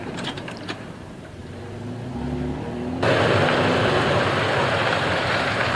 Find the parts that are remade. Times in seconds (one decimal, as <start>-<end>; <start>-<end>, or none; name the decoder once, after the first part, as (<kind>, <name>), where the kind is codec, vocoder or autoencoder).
0.0-1.4 (vocoder, BigVGAN v2); 4.9-5.8